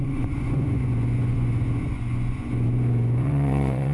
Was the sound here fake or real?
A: fake